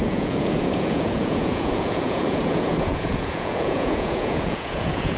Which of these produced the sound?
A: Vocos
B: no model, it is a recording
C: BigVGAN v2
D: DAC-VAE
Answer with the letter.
A